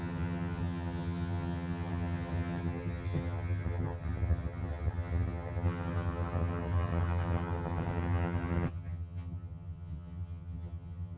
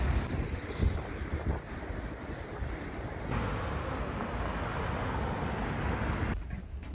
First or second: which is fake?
first